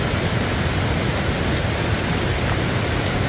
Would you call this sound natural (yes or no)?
yes